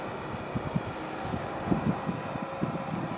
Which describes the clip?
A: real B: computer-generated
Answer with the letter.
A